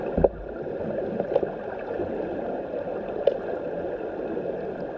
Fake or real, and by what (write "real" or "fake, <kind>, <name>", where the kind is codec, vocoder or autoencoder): real